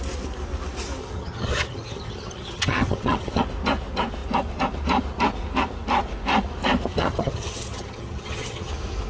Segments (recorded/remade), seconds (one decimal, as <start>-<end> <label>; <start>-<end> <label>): 0.0-1.0 recorded; 1.0-3.4 remade; 3.4-6.9 recorded; 6.9-8.7 remade; 8.7-9.1 recorded